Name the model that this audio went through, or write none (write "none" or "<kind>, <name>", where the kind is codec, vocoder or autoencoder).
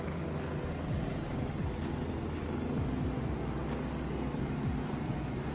none